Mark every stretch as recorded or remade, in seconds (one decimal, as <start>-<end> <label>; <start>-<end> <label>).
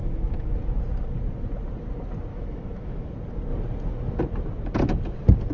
0.0-0.6 remade; 0.6-2.3 recorded; 2.3-3.1 remade; 3.1-5.5 recorded